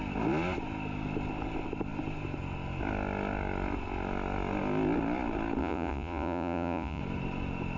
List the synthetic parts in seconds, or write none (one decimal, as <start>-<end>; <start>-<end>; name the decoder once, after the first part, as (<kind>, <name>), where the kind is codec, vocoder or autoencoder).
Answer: 5.6-7.0 (vocoder, Vocos)